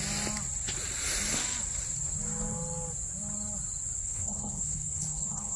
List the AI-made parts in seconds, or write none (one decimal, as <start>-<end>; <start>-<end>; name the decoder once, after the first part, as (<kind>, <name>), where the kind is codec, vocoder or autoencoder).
4.0-5.6 (codec, HILCodec)